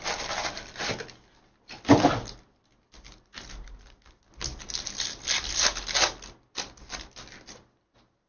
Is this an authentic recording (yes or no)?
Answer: yes